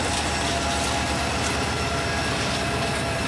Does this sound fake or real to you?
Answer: real